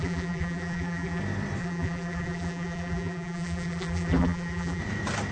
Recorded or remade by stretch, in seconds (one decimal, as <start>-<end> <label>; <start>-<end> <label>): 0.0-1.2 remade; 1.2-1.6 recorded; 1.6-4.8 remade; 4.8-5.3 recorded